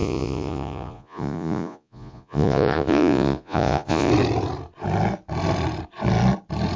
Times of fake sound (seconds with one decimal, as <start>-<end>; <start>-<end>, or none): 0.0-4.1